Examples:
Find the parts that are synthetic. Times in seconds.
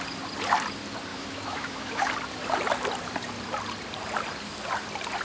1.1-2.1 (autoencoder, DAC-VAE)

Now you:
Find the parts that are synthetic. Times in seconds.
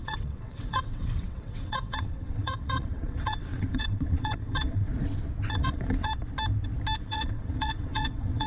0.0-4.9 (vocoder, WaveNeXt); 5.5-6.1; 7.0-8.5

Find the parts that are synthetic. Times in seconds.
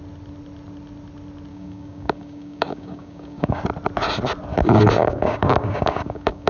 1.5-3.6 (codec, DAC); 4.5-6.5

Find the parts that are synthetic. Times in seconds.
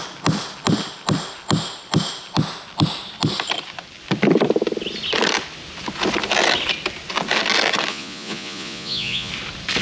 7.9-9.3 (vocoder, Vocos)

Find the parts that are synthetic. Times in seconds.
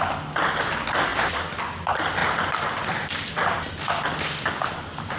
1.1-1.8 (vocoder, BigVGAN v2); 2.2-3.7